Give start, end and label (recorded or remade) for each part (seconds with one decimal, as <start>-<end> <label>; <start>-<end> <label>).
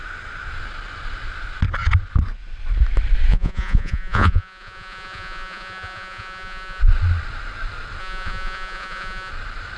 0.0-3.3 recorded; 3.3-6.8 remade; 6.8-8.0 recorded; 8.0-9.3 remade; 9.3-9.8 recorded